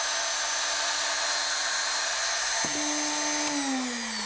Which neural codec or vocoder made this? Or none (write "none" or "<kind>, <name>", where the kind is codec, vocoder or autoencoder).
none